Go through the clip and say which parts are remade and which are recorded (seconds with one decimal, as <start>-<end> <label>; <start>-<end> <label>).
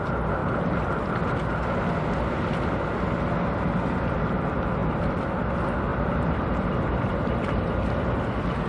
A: 0.0-5.9 recorded; 5.9-7.1 remade; 7.1-8.7 recorded